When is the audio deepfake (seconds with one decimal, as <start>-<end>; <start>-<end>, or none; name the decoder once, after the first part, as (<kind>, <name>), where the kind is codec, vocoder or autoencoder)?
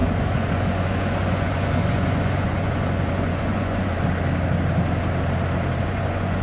0.0-3.9 (vocoder, Vocos); 5.8-6.4